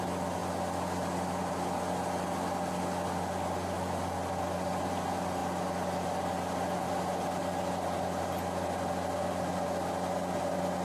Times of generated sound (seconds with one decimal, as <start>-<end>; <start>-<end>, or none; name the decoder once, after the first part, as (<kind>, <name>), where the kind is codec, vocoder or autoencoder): none